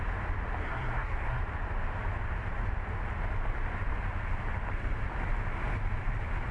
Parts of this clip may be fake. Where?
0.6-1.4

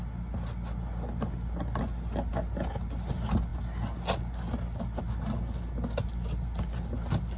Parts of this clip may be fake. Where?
none

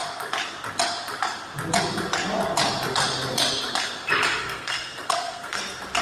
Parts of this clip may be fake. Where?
4.4-5.6

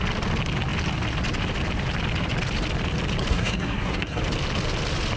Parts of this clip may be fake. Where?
3.3-4.2